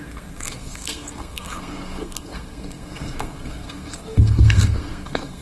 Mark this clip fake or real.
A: fake